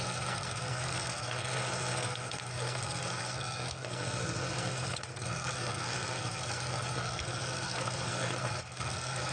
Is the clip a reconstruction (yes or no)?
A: yes